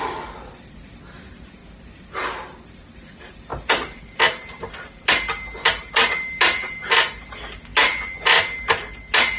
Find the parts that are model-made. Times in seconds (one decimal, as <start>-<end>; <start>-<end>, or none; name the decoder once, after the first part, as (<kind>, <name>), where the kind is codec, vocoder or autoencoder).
none